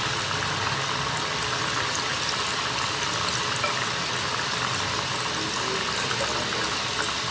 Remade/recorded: recorded